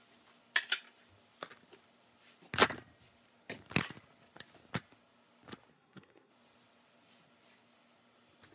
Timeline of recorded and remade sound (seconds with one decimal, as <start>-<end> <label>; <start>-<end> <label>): 0.0-5.7 recorded; 5.7-6.3 remade; 6.3-8.5 recorded